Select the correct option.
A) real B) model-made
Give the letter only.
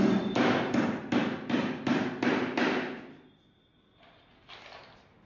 A